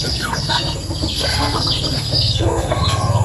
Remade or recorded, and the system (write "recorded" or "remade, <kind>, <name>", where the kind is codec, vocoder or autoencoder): remade, codec, SNAC